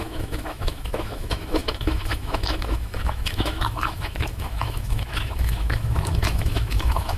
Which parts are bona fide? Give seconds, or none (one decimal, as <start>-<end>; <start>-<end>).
none